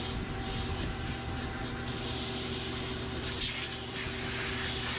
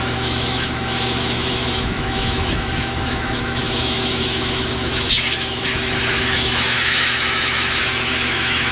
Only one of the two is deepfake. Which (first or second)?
second